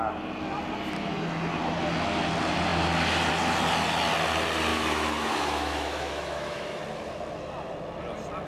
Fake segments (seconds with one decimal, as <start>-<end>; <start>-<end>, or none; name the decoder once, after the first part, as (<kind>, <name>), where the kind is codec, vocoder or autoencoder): 4.7-6.8 (autoencoder, DAC-VAE)